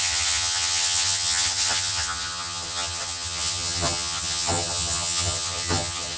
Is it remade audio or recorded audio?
remade